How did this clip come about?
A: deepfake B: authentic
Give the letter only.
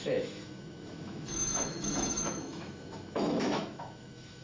A